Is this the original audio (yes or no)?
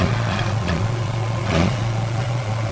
no